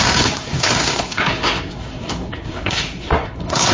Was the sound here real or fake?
fake